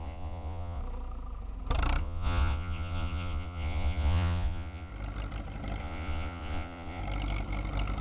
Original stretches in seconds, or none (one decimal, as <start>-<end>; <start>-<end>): 0.8-2.0; 4.9-5.8; 7.0-8.0